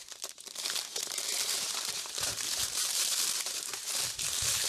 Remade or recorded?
remade